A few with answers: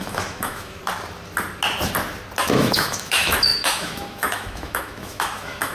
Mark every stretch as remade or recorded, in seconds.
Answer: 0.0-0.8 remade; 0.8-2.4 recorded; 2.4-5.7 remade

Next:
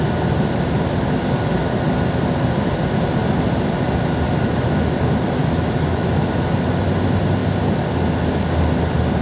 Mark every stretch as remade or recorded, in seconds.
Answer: 0.0-5.4 recorded; 5.4-6.2 remade; 6.2-9.2 recorded